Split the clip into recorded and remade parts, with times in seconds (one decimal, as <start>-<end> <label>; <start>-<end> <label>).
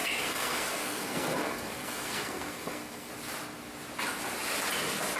0.0-3.1 remade; 3.1-5.2 recorded